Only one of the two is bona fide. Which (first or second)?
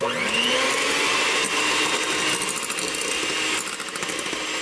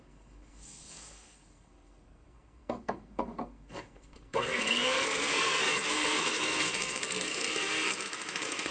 first